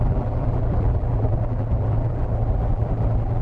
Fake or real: fake